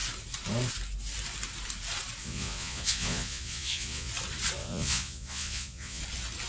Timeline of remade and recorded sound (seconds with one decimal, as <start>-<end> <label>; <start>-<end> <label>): 0.0-2.2 recorded; 2.2-4.1 remade; 4.1-4.6 recorded; 4.6-6.0 remade; 6.0-6.5 recorded